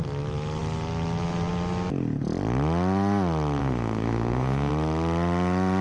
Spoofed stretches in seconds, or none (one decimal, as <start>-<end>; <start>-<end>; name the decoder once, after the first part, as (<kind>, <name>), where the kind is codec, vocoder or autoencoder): 3.6-4.7 (codec, SNAC)